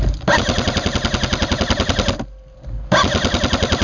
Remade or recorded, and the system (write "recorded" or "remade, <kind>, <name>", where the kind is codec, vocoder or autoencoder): recorded